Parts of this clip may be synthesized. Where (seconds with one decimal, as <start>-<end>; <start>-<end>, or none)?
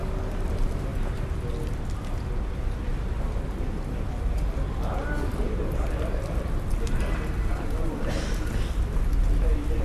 none